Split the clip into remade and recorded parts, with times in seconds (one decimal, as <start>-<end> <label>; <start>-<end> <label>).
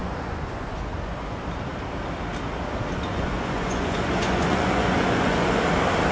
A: 0.0-1.4 remade; 1.4-3.1 recorded; 3.1-5.6 remade; 5.6-6.1 recorded